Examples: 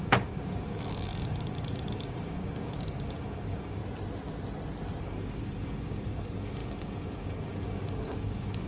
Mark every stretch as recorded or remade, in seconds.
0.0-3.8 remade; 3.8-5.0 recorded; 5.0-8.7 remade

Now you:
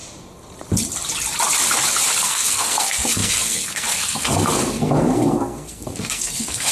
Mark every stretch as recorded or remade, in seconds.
0.0-2.2 recorded; 2.2-6.7 remade

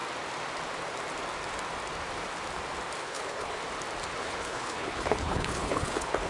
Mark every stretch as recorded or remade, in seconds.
0.0-3.0 recorded; 3.0-3.6 remade; 3.6-4.2 recorded; 4.2-6.3 remade

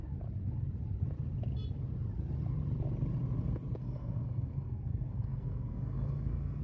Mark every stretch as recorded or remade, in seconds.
0.0-3.8 recorded; 3.8-6.6 remade